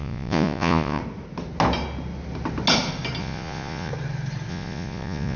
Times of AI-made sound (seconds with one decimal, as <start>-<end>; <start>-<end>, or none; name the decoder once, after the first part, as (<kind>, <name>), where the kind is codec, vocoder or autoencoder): 0.0-1.0 (vocoder, Vocos); 3.2-3.9; 4.5-5.4